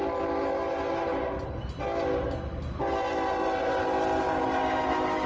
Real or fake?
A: real